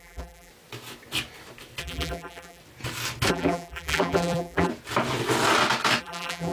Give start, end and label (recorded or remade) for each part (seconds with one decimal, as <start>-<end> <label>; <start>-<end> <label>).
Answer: 0.0-0.5 remade; 0.5-1.8 recorded; 1.8-2.6 remade; 2.6-3.3 recorded; 3.3-4.7 remade; 4.7-6.0 recorded; 6.0-6.5 remade